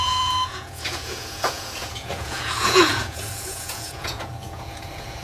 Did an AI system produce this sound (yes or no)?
yes